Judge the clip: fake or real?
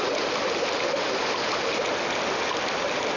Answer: real